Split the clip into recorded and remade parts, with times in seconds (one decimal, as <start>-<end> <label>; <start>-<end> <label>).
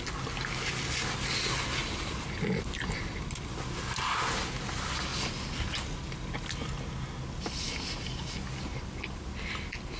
0.0-1.8 recorded; 1.8-2.4 remade; 2.4-10.0 recorded